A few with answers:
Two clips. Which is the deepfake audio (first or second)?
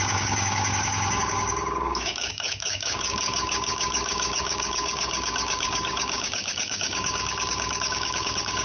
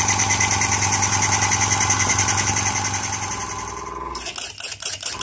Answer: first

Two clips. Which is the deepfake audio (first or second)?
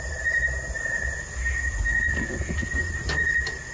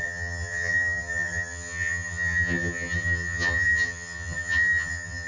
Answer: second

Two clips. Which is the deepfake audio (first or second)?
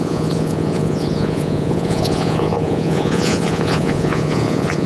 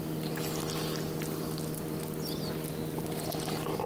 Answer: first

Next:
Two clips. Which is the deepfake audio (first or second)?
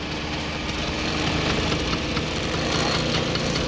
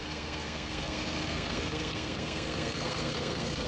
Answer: second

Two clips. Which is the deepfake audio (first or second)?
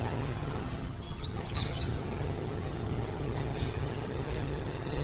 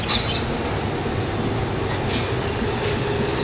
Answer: first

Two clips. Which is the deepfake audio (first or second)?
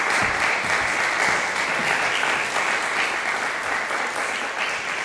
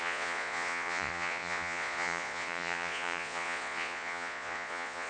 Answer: second